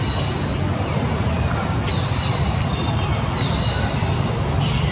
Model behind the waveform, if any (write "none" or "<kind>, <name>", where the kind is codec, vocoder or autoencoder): none